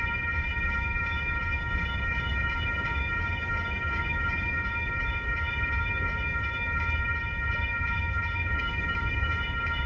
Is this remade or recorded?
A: remade